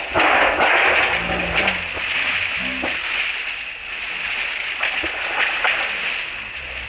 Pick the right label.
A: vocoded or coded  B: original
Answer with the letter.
B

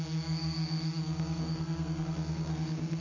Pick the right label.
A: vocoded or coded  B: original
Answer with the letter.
A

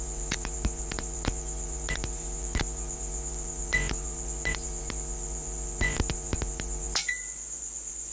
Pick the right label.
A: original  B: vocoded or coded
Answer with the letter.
B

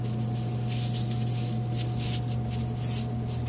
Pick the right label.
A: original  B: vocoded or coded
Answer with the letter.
A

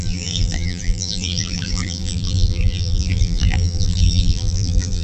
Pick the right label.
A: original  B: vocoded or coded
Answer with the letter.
B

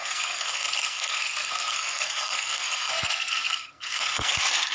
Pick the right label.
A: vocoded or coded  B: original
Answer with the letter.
A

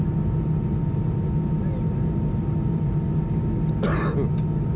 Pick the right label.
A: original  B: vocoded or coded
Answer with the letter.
A